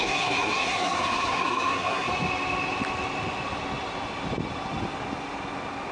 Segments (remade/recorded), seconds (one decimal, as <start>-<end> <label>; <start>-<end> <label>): 0.0-2.1 remade; 2.1-5.9 recorded